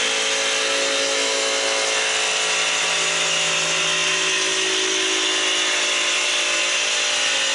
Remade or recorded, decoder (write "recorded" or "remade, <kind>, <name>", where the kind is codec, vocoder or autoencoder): recorded